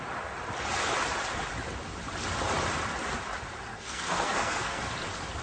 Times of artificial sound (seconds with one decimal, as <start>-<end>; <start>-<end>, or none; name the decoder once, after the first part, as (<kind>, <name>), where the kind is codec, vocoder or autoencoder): 3.7-4.8 (codec, SNAC)